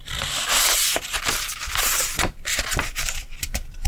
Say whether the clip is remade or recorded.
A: remade